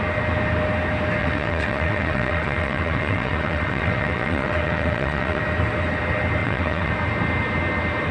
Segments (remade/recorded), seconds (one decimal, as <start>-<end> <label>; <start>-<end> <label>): 0.0-1.2 recorded; 1.2-5.4 remade; 5.4-6.4 recorded; 6.4-6.9 remade; 6.9-8.1 recorded